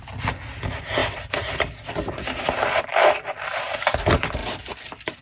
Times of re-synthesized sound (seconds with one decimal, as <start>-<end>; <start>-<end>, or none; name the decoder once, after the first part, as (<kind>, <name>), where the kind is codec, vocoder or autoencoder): 4.4-5.2 (vocoder, BigVGAN v2)